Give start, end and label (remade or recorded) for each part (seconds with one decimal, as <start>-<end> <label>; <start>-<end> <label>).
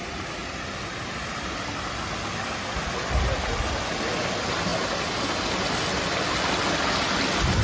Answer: 0.0-7.6 recorded